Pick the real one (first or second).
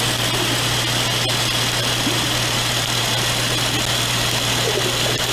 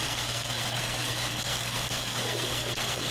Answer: first